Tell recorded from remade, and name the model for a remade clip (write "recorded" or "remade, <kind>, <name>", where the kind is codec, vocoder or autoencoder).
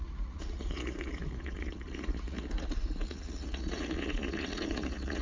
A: remade, vocoder, Vocos